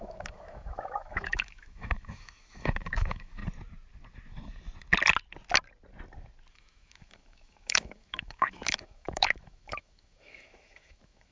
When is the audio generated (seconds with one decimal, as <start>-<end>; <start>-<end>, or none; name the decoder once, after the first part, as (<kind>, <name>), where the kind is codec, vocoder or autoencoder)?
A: 0.0-3.4 (autoencoder, DAC-VAE); 6.5-11.3